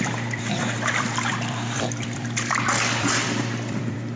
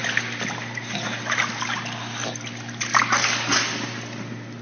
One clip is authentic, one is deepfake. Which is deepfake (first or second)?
first